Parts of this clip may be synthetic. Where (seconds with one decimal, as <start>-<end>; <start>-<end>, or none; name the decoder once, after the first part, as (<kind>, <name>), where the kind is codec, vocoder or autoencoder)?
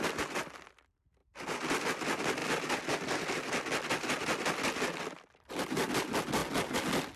none